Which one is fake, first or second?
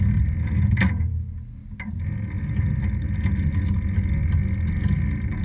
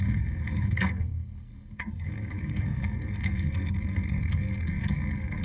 second